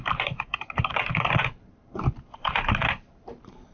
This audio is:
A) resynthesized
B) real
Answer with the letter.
A